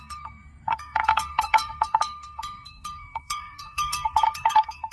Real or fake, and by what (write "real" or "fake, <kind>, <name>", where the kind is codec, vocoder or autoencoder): fake, codec, SNAC